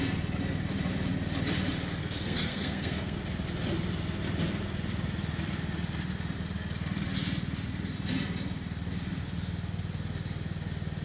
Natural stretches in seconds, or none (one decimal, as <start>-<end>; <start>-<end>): 0.0-2.0; 3.2-11.0